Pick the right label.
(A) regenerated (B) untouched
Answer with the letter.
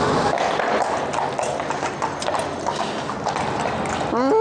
B